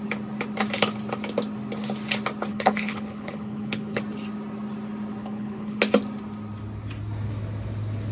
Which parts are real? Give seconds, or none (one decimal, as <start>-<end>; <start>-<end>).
0.0-2.5; 4.0-5.2; 5.8-8.1